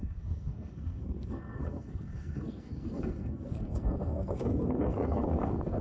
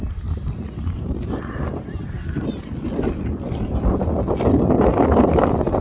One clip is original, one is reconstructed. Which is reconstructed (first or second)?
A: first